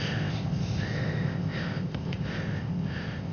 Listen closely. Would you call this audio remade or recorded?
remade